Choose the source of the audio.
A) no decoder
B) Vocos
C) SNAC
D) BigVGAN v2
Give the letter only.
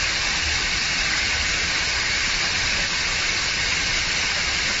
D